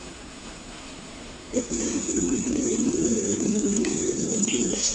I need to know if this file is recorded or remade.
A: remade